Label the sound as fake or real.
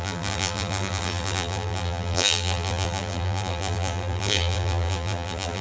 fake